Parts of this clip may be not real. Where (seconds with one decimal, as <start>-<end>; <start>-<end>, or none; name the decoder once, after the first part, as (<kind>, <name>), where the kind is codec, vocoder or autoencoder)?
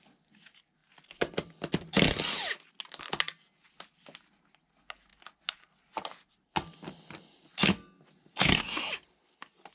8.3-8.9 (codec, SNAC)